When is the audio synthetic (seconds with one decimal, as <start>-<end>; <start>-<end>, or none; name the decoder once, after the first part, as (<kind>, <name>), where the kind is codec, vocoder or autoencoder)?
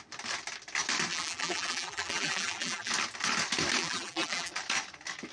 1.1-2.9 (vocoder, BigVGAN v2); 3.8-4.5